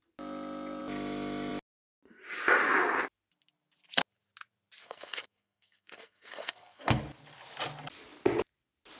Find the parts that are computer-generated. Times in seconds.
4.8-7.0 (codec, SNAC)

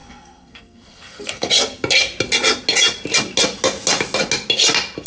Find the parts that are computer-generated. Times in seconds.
0.0-1.5 (codec, SNAC)

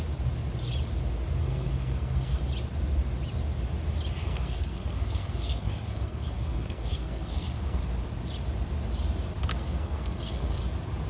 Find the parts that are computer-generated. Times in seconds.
1.4-2.4 (codec, SNAC); 4.2-7.8; 9.5-10.6

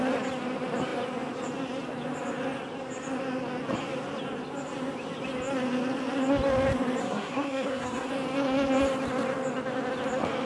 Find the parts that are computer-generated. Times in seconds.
7.0-8.1 (codec, SNAC)